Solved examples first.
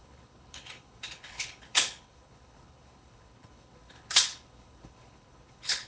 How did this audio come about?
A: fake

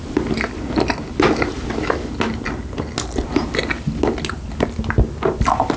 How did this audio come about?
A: real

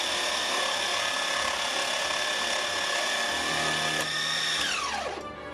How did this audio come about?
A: real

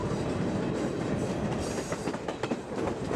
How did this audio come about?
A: fake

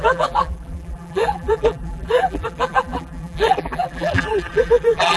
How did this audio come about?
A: fake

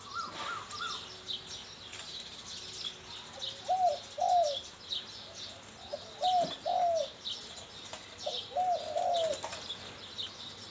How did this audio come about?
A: real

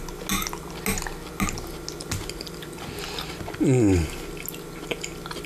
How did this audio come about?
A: real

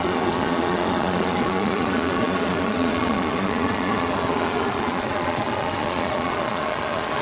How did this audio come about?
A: fake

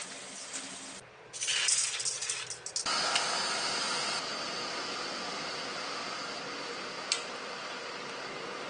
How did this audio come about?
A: real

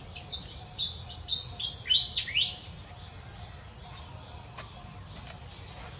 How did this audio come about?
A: real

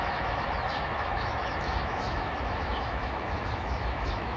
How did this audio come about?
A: fake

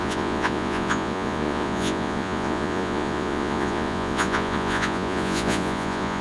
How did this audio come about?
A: fake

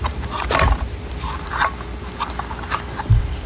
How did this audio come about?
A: fake